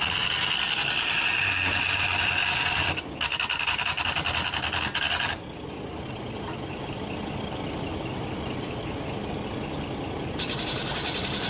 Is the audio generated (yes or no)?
no